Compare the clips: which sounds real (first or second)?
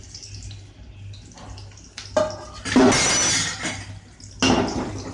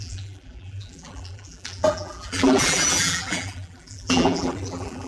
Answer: first